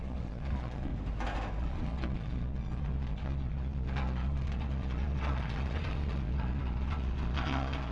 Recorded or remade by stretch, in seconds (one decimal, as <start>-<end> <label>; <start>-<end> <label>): 0.0-0.9 remade; 0.9-1.6 recorded; 1.6-7.9 remade